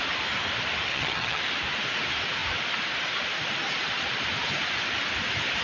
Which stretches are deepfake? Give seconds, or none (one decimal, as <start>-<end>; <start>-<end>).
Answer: 0.9-1.4